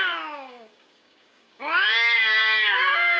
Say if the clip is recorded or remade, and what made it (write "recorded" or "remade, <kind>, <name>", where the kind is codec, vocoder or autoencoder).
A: remade, codec, DAC